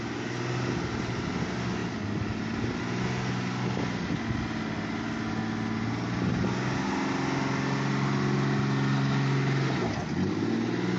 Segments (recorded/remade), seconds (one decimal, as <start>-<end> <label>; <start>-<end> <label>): 0.0-11.0 recorded

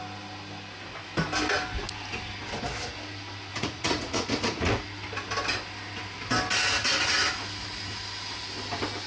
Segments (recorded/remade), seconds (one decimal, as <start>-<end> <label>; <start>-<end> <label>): 0.0-3.5 recorded; 3.5-4.7 remade; 4.7-9.1 recorded

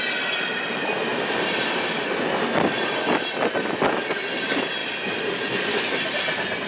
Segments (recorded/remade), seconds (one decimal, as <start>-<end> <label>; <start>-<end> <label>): 0.0-1.1 recorded; 1.1-2.2 remade; 2.2-6.7 recorded

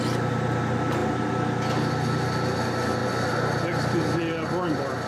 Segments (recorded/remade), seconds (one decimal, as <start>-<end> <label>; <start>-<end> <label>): 0.0-5.1 recorded

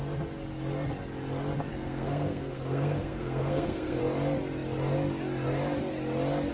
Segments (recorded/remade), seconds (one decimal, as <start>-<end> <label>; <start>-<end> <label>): 0.0-1.7 recorded; 1.7-4.0 remade; 4.0-6.5 recorded